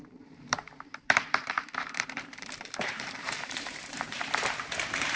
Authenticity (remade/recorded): remade